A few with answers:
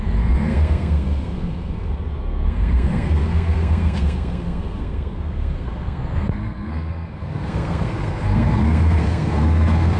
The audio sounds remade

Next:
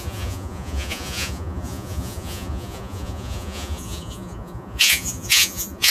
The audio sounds remade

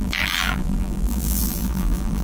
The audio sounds remade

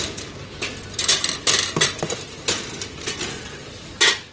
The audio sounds recorded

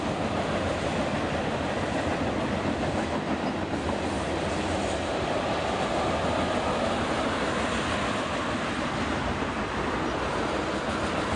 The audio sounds recorded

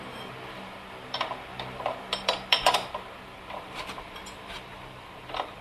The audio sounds remade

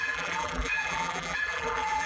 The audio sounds remade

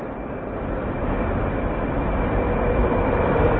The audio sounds recorded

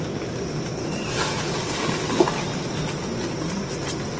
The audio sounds recorded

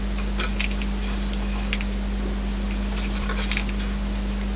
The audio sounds recorded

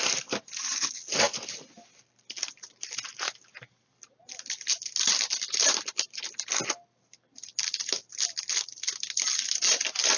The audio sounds recorded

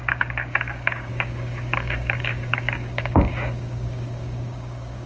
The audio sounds remade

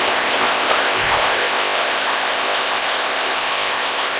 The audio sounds remade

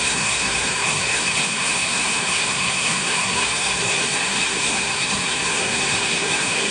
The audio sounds remade